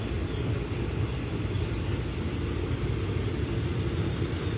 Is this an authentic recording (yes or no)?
yes